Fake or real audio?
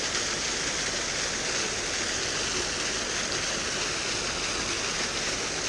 real